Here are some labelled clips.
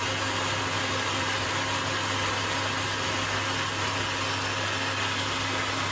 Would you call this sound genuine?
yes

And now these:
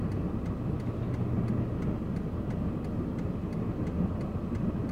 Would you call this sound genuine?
yes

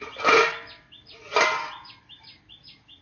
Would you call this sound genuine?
yes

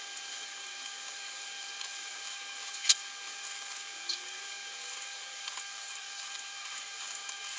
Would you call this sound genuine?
no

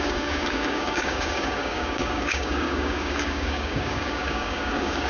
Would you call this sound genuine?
no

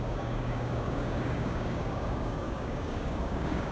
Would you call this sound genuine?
no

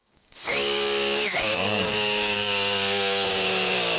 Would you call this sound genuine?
no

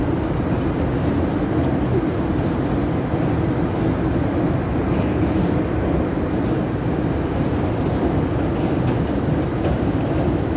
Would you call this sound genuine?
yes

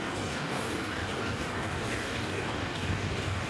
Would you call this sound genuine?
no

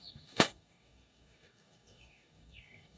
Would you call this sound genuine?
no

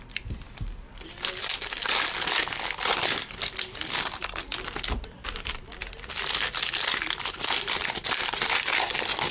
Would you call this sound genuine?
yes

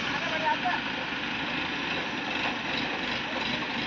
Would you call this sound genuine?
yes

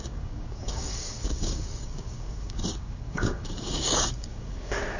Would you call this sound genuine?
no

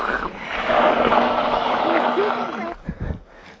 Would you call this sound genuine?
no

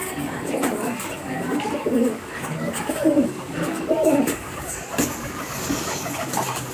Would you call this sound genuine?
no